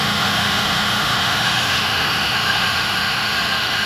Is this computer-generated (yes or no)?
yes